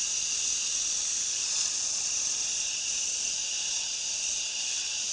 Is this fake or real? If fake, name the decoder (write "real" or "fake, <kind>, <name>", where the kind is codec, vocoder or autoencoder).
real